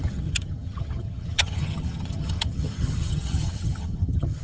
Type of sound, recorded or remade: remade